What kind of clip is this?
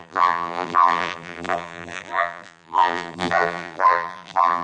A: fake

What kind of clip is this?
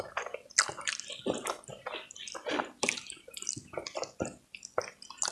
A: real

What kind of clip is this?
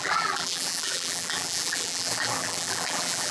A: fake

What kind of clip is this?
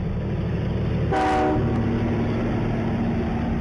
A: real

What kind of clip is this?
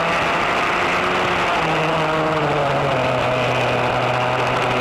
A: real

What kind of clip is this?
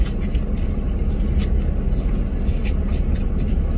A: real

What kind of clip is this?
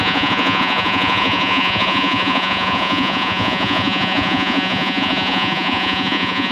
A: fake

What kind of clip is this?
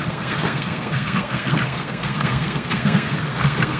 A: fake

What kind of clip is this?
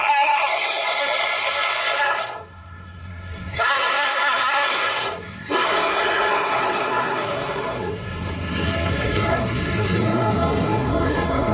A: fake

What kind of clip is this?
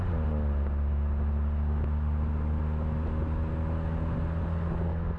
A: real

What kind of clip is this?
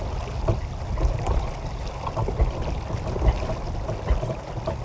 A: real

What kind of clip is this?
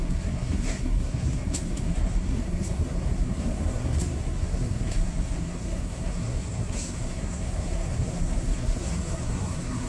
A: fake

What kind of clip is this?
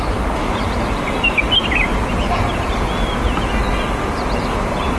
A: real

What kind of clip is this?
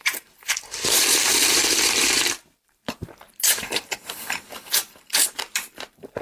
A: fake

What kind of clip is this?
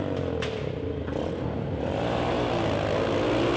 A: real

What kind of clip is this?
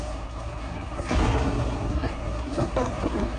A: fake